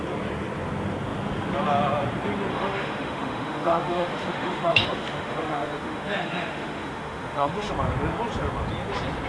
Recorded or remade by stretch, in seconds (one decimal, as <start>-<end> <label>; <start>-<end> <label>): 0.0-2.5 recorded; 2.5-7.7 remade; 7.7-9.3 recorded

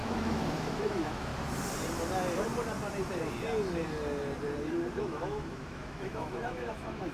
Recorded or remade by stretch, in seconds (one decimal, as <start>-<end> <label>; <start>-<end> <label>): 0.0-1.3 remade; 1.3-5.0 recorded; 5.0-7.1 remade

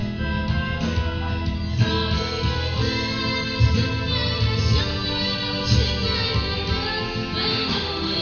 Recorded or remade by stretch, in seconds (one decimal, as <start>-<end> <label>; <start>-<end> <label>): 0.0-7.5 recorded; 7.5-8.2 remade

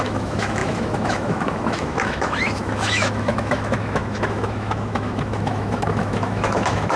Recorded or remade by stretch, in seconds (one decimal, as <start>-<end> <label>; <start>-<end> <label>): 0.0-7.0 remade

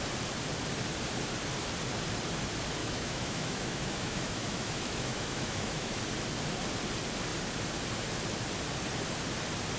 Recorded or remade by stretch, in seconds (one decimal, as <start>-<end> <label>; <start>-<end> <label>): 0.0-2.8 recorded; 2.8-6.0 remade; 6.0-9.8 recorded

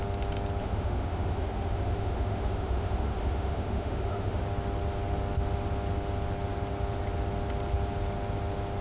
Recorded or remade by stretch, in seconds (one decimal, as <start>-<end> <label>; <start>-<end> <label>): 0.0-0.6 recorded; 0.6-4.4 remade; 4.4-8.8 recorded

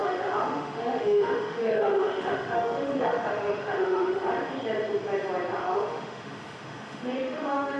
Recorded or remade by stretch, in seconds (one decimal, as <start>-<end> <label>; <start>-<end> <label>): 0.0-4.6 remade; 4.6-5.6 recorded; 5.6-7.8 remade